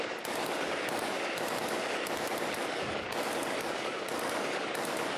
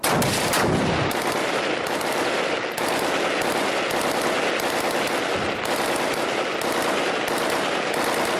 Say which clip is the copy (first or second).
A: first